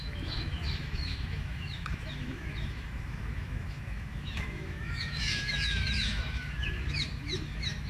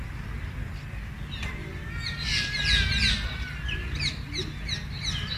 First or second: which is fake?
first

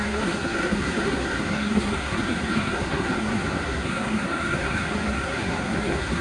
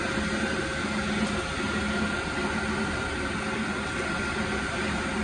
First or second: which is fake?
first